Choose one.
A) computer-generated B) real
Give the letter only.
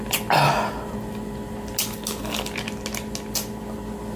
B